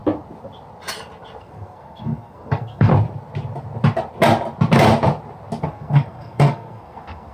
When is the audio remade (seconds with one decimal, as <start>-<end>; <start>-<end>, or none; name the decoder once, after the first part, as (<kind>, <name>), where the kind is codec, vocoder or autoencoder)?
1.4-2.9 (codec, SNAC); 5.6-7.3